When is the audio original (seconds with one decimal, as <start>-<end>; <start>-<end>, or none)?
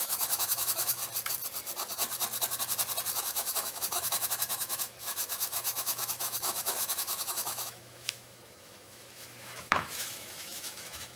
1.0-3.2